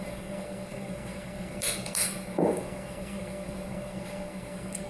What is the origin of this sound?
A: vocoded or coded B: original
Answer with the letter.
A